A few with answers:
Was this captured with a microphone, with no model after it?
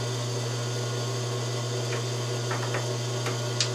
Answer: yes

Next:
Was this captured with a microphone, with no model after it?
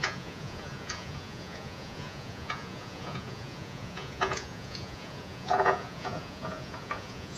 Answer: no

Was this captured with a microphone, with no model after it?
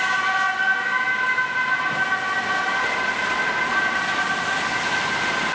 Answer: yes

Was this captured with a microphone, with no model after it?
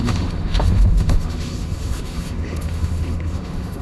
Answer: no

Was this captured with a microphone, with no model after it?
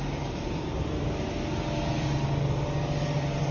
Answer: yes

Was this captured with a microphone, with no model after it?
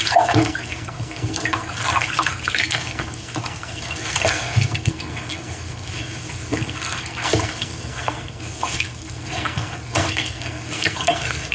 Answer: no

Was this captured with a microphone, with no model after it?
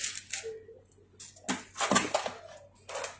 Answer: yes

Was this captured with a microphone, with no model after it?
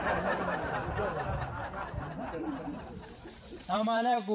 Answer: no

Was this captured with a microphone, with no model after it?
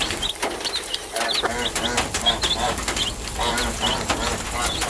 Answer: yes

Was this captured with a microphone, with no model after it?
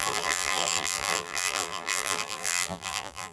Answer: no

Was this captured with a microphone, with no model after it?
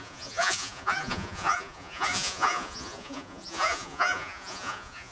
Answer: no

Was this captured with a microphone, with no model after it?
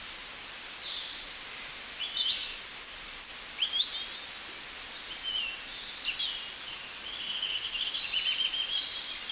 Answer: yes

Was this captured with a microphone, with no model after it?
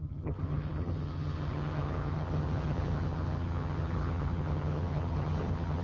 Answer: no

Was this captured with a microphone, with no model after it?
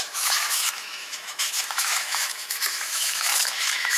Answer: no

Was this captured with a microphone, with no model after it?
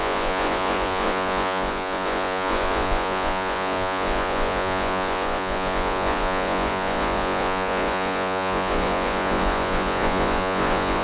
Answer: no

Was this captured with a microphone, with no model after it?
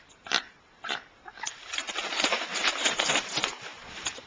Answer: no